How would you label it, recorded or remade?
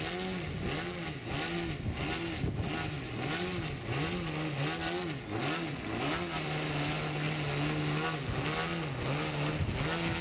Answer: recorded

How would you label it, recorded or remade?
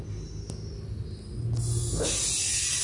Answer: recorded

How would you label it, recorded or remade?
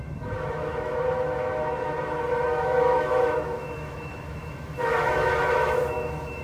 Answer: remade